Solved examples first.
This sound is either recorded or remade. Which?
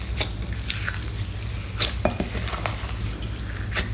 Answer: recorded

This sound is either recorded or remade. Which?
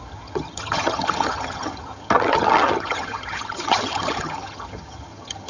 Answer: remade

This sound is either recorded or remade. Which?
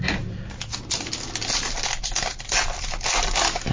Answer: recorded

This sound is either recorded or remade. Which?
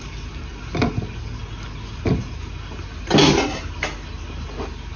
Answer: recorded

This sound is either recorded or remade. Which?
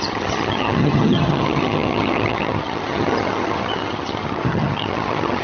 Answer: remade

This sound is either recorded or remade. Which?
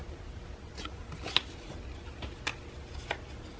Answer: recorded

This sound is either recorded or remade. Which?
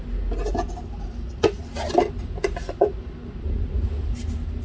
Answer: recorded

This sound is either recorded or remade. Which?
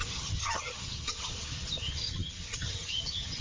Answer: remade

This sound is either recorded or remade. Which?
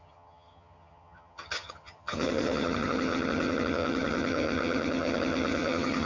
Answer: remade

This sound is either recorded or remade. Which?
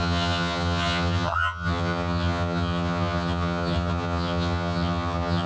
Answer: remade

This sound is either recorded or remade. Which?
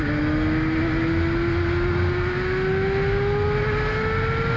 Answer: recorded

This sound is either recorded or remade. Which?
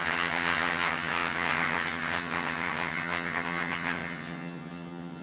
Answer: remade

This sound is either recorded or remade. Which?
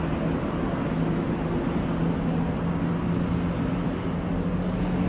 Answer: recorded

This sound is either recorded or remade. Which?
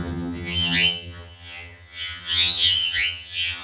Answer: remade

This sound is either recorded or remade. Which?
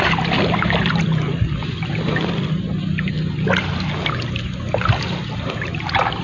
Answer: recorded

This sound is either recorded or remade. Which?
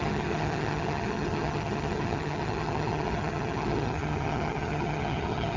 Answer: remade